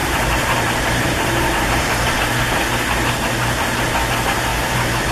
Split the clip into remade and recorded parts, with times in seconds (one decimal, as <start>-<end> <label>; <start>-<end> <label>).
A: 0.0-2.2 remade; 2.2-5.1 recorded